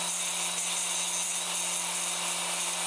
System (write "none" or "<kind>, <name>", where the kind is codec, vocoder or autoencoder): none